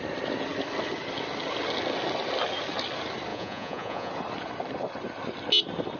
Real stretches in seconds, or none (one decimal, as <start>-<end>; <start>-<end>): 0.0-3.3; 4.1-6.0